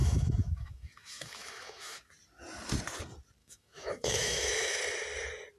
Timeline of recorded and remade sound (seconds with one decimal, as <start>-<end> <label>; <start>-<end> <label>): 0.0-2.1 remade; 2.1-3.4 recorded; 3.4-4.8 remade; 4.8-5.6 recorded